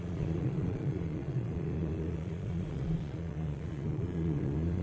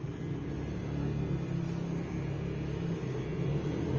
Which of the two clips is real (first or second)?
second